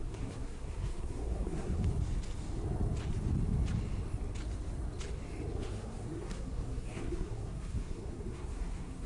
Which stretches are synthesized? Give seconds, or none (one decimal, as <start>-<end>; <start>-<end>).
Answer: 0.0-1.9; 5.5-9.1